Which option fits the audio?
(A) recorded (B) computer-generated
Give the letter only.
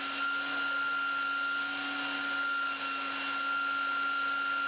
A